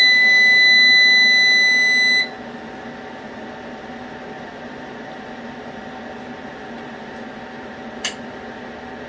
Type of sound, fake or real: real